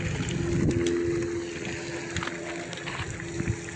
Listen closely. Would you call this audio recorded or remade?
recorded